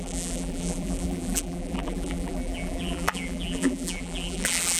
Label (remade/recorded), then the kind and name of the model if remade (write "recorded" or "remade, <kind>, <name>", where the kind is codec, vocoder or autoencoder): remade, vocoder, BigVGAN v2